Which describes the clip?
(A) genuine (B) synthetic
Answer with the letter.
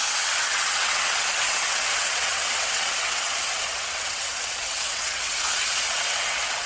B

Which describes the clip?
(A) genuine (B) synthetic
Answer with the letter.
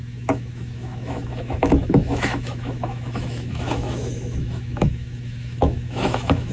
B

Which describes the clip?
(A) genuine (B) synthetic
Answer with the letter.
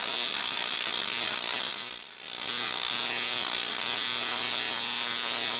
A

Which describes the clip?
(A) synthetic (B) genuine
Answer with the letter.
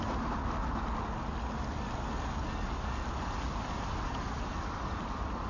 B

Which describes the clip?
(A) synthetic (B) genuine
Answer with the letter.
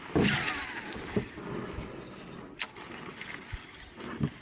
B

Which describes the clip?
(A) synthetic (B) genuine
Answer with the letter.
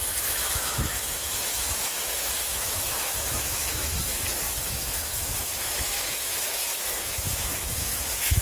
A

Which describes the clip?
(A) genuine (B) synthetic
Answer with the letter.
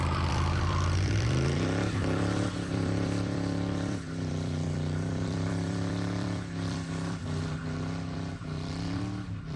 B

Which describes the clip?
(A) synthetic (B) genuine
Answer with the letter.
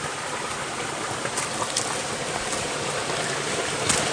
B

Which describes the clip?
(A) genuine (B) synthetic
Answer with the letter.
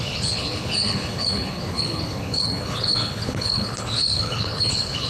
B